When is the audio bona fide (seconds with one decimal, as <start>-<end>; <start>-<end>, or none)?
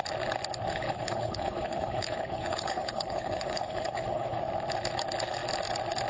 0.0-0.7; 4.4-6.1